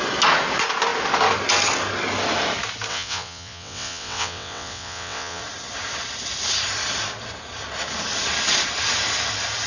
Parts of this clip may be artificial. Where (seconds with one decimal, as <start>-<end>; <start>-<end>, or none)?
2.9-5.4